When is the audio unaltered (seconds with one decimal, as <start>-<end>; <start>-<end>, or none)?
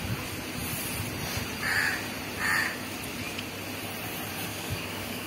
0.0-4.5